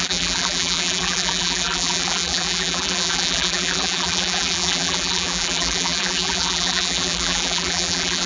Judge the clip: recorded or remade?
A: remade